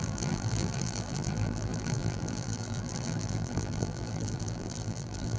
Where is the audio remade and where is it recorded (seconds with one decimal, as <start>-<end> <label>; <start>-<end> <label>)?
0.0-5.4 remade